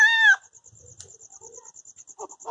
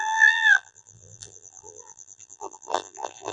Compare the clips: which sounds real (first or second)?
first